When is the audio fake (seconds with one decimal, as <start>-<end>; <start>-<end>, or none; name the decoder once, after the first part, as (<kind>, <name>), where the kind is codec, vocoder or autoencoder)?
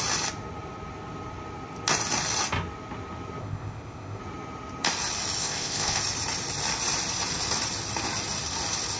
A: 3.4-4.2 (codec, ZipCodec); 5.4-6.0